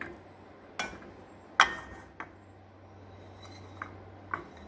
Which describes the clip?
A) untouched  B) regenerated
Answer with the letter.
A